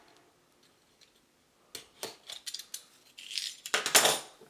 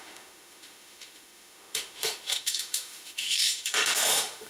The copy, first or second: second